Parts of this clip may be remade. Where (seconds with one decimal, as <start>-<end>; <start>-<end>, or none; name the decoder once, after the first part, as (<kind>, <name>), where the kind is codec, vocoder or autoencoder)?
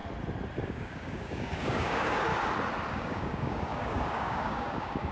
0.6-2.3 (codec, DAC); 2.9-5.1